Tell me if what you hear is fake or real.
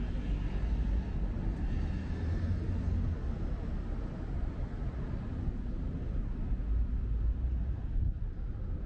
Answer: real